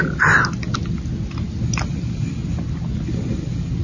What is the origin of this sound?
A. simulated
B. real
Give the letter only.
B